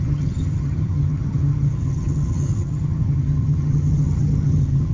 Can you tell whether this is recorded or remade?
remade